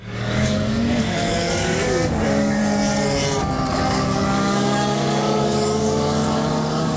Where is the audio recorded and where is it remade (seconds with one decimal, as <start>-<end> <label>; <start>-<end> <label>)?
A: 0.0-2.6 remade; 2.6-3.4 recorded; 3.4-7.0 remade